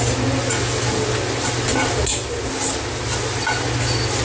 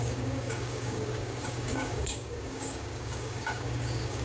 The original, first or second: first